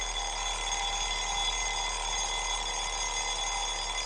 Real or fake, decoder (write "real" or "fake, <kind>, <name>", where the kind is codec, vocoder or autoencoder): real